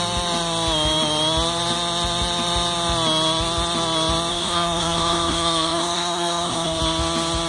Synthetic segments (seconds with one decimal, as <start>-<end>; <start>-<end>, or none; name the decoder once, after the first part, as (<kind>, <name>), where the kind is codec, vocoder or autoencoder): 4.3-6.8 (codec, SNAC)